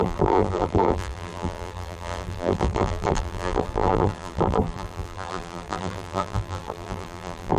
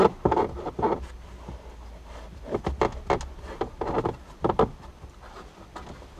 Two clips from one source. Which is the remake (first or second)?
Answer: first